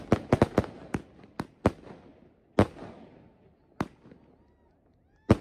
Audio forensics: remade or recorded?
recorded